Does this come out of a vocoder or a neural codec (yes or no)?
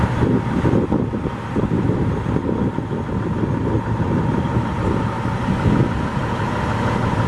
no